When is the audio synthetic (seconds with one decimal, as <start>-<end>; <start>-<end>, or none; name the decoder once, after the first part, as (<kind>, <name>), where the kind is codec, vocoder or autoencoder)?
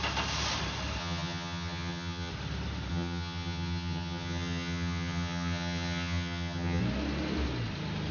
1.0-2.3 (vocoder, HiFi-GAN); 2.9-6.8